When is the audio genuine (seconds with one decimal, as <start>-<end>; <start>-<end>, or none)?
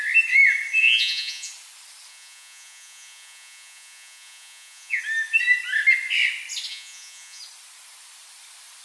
0.0-0.8; 1.5-2.1; 5.0-6.7; 7.4-8.8